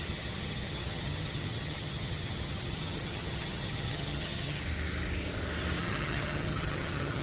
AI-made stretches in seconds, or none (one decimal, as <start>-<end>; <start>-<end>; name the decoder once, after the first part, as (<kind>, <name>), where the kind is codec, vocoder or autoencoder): 0.0-4.6 (vocoder, HiFi-GAN); 5.8-7.2